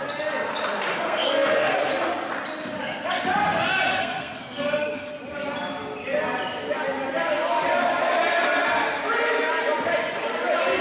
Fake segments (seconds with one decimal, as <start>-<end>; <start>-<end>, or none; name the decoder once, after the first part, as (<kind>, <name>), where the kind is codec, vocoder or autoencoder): 0.9-1.9 (codec, SNAC); 4.0-5.1